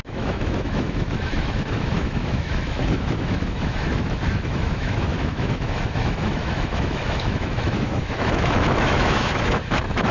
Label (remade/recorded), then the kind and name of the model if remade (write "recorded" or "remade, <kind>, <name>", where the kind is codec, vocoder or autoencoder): remade, autoencoder, DAC-VAE